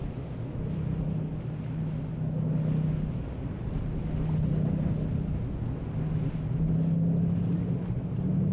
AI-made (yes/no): no